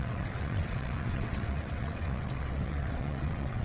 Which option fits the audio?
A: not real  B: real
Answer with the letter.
A